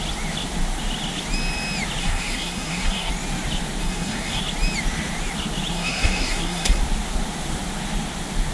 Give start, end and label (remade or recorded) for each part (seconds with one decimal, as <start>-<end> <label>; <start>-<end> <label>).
0.0-2.0 recorded; 2.0-3.1 remade; 3.1-3.8 recorded; 3.8-4.4 remade; 4.4-5.7 recorded; 5.7-6.8 remade; 6.8-8.5 recorded